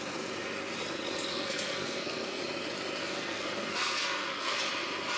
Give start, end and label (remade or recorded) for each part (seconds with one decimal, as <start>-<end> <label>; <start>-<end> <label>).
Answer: 0.0-1.3 recorded; 1.3-2.4 remade; 2.4-3.0 recorded; 3.0-4.6 remade; 4.6-5.2 recorded